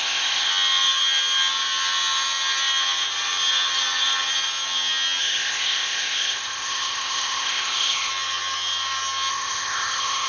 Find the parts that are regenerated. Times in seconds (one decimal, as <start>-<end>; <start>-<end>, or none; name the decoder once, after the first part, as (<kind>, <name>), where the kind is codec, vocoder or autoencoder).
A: 0.0-0.5 (codec, ZipCodec); 5.2-8.1; 9.3-10.3